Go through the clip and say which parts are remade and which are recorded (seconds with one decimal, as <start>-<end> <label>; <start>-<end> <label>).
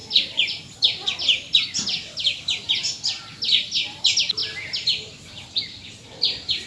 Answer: 0.0-6.7 recorded